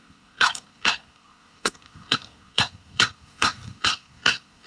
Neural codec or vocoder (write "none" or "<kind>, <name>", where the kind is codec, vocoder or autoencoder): codec, SNAC